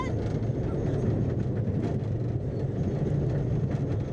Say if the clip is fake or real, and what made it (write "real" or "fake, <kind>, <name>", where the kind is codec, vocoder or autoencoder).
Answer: real